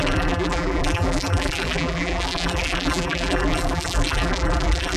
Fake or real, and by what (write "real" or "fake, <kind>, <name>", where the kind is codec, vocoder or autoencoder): fake, vocoder, BigVGAN v2